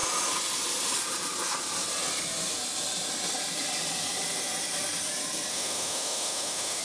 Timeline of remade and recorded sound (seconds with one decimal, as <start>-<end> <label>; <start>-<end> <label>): 0.0-5.5 recorded; 5.5-6.8 remade